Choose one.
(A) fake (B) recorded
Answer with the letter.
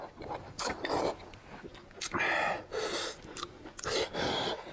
B